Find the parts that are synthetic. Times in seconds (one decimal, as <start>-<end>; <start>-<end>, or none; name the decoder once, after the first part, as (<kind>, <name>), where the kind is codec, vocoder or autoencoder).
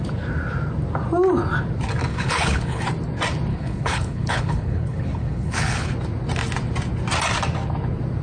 2.1-2.8 (codec, HILCodec); 3.5-5.9